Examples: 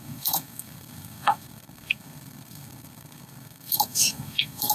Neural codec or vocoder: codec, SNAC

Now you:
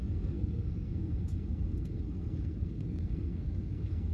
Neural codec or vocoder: codec, SNAC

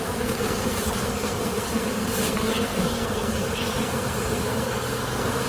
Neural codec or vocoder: codec, SNAC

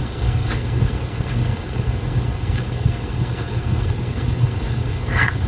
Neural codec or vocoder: codec, SNAC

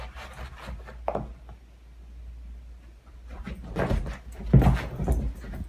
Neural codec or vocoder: none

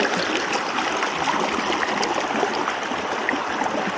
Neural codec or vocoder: none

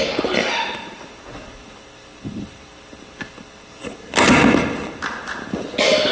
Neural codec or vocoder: none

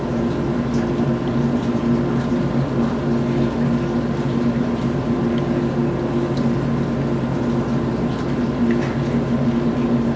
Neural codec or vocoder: none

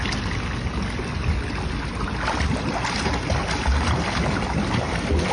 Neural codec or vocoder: none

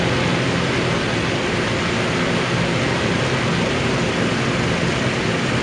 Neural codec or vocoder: none